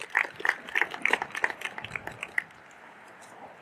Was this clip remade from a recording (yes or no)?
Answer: no